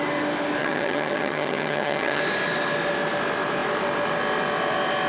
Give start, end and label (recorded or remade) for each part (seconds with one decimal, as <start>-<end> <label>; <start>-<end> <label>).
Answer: 0.0-0.6 recorded; 0.6-2.2 remade; 2.2-5.1 recorded